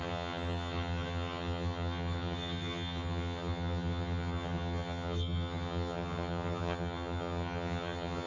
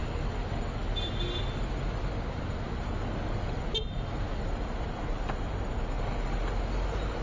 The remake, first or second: first